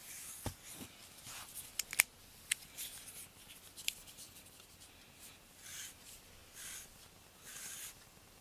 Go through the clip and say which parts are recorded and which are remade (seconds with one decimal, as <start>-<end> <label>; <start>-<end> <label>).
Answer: 0.0-8.4 recorded